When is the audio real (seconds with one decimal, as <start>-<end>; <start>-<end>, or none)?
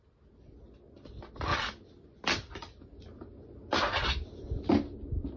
0.0-5.4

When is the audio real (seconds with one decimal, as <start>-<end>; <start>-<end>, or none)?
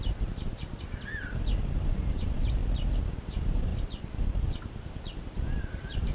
0.5-1.4; 2.6-3.1; 3.7-5.6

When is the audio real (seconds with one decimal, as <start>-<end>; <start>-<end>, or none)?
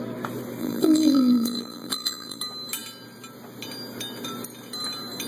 0.0-0.6; 2.4-5.3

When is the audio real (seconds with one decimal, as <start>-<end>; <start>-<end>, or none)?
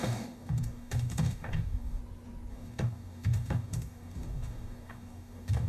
2.0-2.5